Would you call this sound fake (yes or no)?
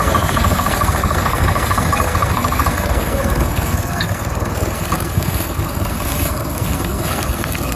yes